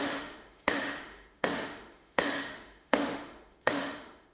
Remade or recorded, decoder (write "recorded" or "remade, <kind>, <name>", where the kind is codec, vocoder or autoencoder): remade, autoencoder, DAC-VAE